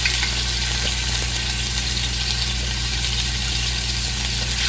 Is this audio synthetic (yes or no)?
no